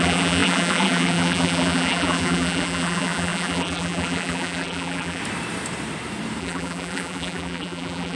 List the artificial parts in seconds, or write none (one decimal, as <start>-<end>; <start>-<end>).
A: 0.0-5.2; 6.4-8.2